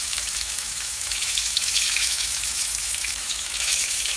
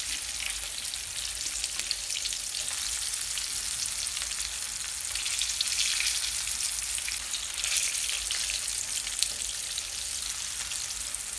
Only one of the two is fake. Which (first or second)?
first